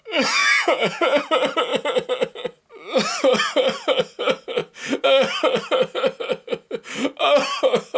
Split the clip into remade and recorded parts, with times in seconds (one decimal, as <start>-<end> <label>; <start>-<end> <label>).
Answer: 0.0-0.4 recorded; 0.4-1.2 remade; 1.2-8.0 recorded

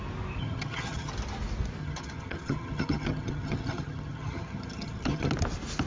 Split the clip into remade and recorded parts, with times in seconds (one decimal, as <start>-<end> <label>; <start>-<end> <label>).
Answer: 0.0-0.4 recorded; 0.4-1.1 remade; 1.1-1.8 recorded; 1.8-5.3 remade; 5.3-5.9 recorded

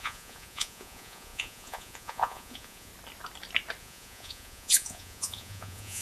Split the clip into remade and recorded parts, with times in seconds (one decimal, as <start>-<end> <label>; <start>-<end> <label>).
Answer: 0.0-2.9 remade; 2.9-3.8 recorded; 3.8-6.0 remade

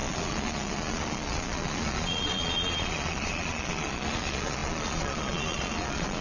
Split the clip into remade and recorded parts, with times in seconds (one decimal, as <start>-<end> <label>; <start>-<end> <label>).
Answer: 0.0-6.2 remade

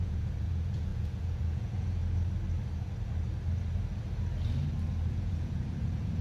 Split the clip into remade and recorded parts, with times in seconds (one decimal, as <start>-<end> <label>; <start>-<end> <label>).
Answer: 0.0-2.0 remade; 2.0-5.1 recorded; 5.1-6.2 remade